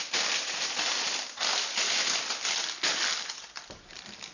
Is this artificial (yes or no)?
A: no